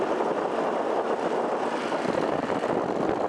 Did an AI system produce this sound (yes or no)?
no